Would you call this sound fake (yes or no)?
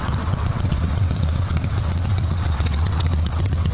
yes